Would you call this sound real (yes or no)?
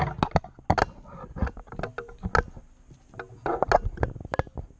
yes